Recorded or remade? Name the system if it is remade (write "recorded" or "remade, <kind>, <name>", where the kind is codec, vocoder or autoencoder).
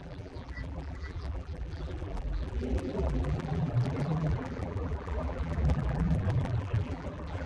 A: remade, vocoder, BigVGAN v2